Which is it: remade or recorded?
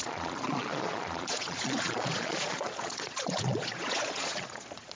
remade